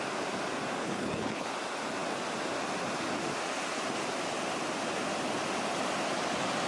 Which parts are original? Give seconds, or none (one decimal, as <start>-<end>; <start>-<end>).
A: 0.0-0.8; 1.5-6.7